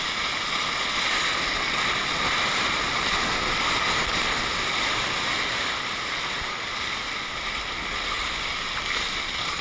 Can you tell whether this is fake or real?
real